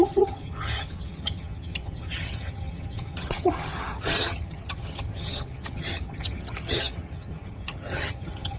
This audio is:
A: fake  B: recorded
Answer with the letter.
A